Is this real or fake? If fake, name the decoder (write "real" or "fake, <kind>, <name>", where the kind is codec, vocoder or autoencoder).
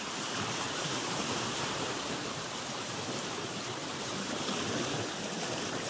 fake, vocoder, BigVGAN v2